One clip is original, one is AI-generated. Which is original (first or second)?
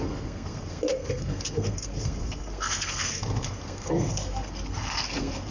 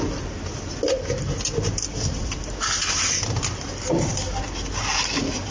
second